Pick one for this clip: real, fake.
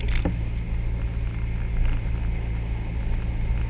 real